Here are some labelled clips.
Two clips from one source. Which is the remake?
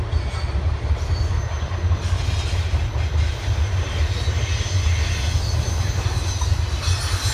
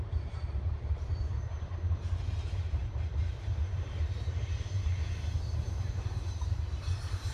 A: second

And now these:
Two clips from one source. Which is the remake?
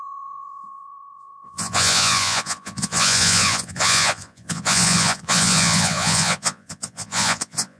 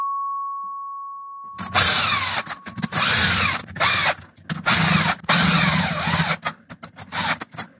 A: first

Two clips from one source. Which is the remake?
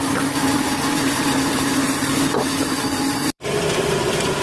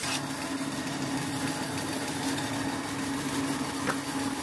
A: first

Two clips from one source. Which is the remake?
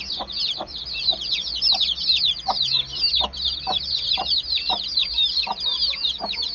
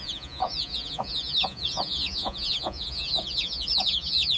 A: second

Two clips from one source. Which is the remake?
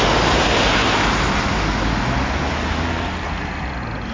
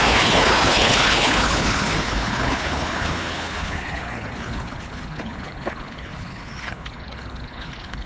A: second